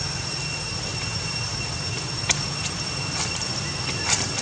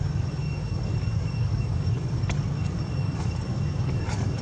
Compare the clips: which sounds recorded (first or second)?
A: first